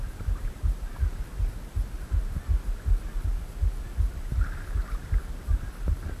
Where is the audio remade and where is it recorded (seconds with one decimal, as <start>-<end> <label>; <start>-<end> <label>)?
0.0-6.2 remade